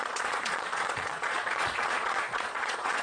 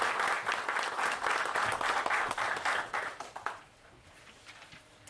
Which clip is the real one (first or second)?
second